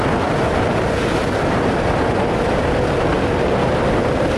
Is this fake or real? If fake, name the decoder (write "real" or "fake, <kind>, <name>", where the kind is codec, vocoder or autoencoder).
fake, vocoder, BigVGAN v2